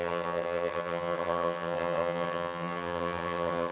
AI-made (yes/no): yes